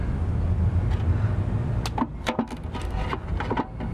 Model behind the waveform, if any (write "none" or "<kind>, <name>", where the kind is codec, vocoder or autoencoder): none